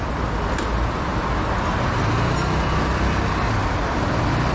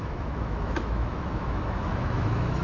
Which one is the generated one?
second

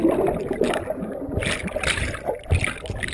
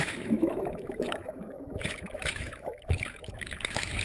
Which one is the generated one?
second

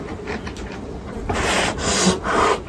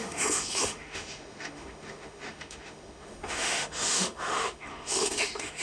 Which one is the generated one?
second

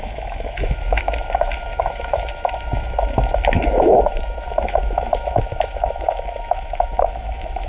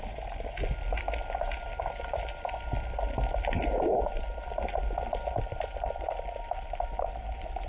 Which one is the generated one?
first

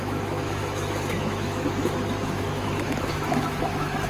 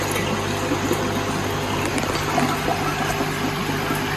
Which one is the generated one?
first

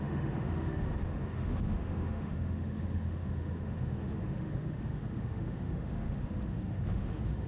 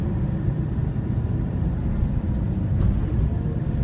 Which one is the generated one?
first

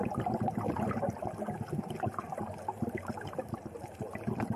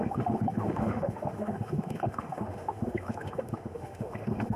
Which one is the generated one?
second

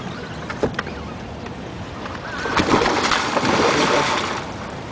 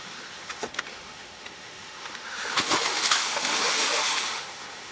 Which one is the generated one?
second